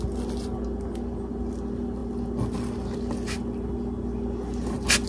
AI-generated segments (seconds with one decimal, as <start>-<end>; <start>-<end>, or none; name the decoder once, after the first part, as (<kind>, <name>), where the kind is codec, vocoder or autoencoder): none